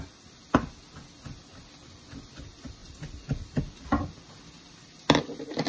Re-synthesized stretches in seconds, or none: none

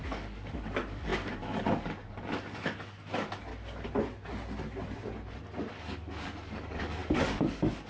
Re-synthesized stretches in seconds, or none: 0.0-3.5 (codec, DAC); 5.7-7.9

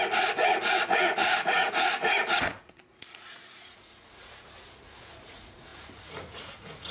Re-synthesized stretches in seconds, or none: 0.0-6.9 (vocoder, Vocos)

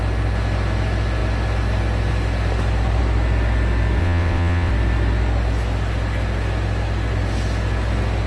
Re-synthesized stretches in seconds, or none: 4.0-4.7 (vocoder, WaveNeXt)